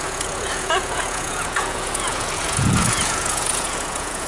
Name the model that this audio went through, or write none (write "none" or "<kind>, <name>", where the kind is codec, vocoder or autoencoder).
vocoder, Vocos